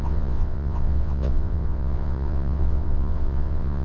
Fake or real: fake